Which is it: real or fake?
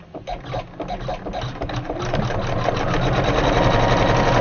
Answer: real